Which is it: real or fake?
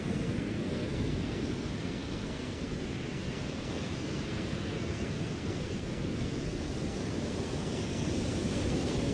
fake